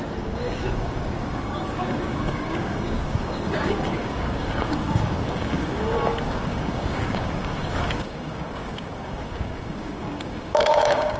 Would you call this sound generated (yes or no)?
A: yes